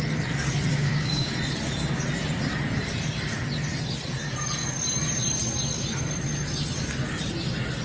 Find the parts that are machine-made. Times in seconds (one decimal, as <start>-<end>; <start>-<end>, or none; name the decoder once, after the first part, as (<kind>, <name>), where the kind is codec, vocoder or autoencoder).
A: 0.7-1.3 (codec, DAC)